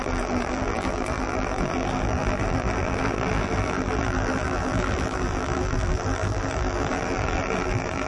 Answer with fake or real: fake